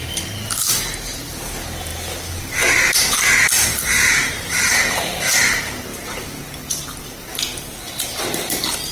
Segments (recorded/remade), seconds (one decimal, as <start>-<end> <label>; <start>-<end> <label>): 0.0-3.7 recorded; 3.7-5.4 remade; 5.4-5.9 recorded; 5.9-6.4 remade; 6.4-7.5 recorded; 7.5-8.2 remade; 8.2-8.9 recorded